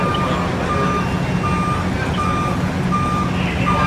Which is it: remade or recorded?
recorded